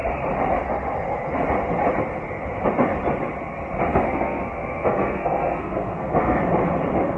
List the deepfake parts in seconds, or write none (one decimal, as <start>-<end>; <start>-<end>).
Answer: 3.9-6.4